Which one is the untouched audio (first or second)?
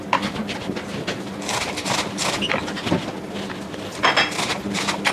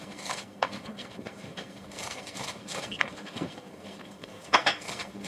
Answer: first